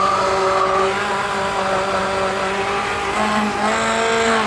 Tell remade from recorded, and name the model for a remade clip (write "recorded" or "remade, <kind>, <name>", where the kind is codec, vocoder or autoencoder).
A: recorded